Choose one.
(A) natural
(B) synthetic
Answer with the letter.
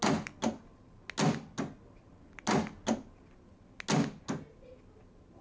A